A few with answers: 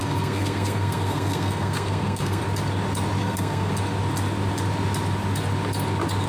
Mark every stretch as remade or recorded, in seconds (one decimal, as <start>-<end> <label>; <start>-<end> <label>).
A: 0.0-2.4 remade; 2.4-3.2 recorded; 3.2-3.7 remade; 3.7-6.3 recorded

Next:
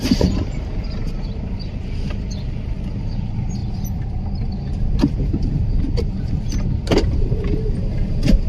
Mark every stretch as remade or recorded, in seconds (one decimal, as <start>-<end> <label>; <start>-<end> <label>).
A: 0.0-3.6 remade; 3.6-5.0 recorded; 5.0-8.5 remade

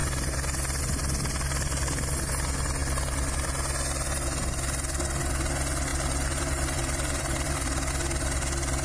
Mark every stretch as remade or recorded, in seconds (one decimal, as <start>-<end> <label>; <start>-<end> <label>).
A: 0.0-5.9 recorded; 5.9-7.9 remade; 7.9-8.8 recorded